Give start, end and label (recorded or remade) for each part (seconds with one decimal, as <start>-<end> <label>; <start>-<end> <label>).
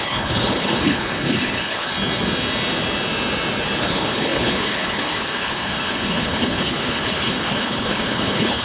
0.0-1.9 remade; 1.9-3.8 recorded; 3.8-8.6 remade